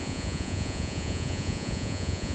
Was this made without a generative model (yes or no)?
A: no